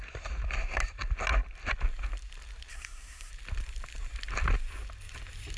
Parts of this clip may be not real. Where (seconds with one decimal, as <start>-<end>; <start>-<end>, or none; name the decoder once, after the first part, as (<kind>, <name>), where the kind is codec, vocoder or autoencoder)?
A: 2.7-3.3 (codec, SNAC)